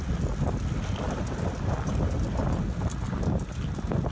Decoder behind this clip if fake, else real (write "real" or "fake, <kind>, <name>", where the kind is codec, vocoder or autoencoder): real